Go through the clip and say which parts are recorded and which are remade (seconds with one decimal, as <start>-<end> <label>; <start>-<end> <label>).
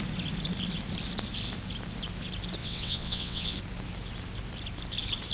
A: 0.0-2.6 recorded; 2.6-3.6 remade; 3.6-5.3 recorded